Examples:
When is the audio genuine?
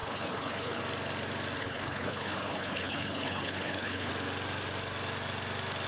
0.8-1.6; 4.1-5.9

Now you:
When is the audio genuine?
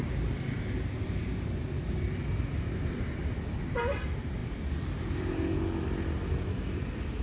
0.0-7.2